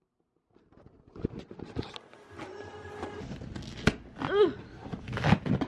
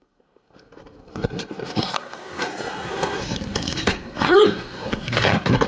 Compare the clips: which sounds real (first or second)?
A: first